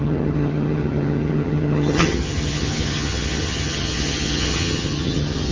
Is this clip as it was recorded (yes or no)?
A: no